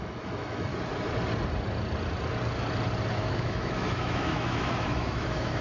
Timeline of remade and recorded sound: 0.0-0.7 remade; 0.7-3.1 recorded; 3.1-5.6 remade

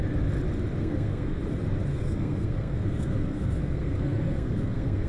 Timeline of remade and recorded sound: 0.0-0.8 recorded; 0.8-1.4 remade; 1.4-1.9 recorded; 1.9-5.1 remade